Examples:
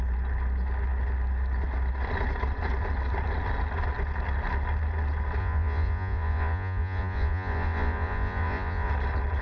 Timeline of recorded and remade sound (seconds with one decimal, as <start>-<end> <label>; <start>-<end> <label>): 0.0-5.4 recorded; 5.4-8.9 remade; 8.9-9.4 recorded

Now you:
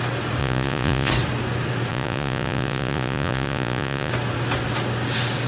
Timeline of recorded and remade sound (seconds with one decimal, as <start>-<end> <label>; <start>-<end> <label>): 0.0-0.4 recorded; 0.4-1.1 remade; 1.1-1.9 recorded; 1.9-4.1 remade; 4.1-5.5 recorded

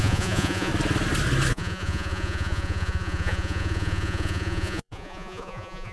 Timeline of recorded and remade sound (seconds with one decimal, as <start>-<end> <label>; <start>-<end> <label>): 0.0-0.7 remade; 0.7-1.5 recorded; 1.5-5.9 remade

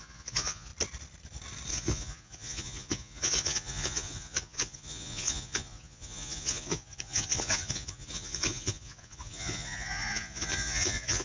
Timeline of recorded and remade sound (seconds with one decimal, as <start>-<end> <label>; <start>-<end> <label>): 0.0-0.7 remade; 0.7-1.7 recorded; 1.7-11.2 remade

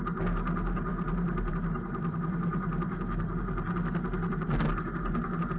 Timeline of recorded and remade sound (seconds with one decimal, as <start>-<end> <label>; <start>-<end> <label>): 0.0-5.6 recorded

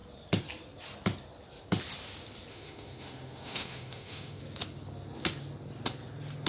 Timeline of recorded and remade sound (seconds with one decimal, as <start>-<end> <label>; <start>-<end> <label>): 0.0-2.5 recorded; 2.5-4.4 remade; 4.4-6.5 recorded

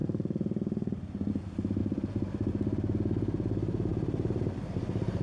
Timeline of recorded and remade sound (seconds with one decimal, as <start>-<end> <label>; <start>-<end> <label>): 0.0-3.9 recorded; 3.9-5.2 remade

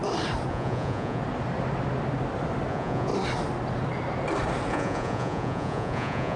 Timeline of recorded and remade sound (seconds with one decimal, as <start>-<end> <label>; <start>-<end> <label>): 0.0-0.5 recorded; 0.5-1.2 remade; 1.2-2.7 recorded; 2.7-3.1 remade; 3.1-4.7 recorded; 4.7-6.4 remade